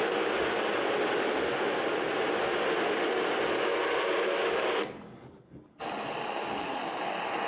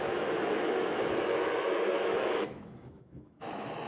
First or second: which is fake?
second